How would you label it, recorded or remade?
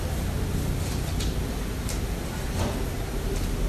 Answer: recorded